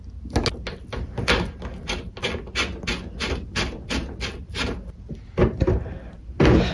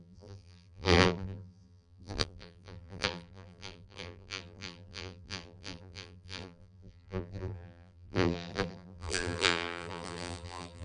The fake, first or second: second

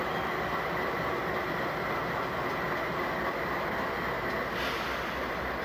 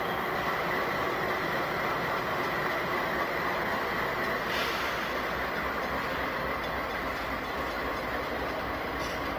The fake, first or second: second